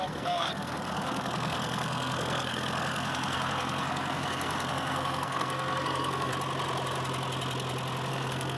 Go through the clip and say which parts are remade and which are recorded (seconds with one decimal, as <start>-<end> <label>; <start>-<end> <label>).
0.0-6.3 remade; 6.3-8.1 recorded; 8.1-8.6 remade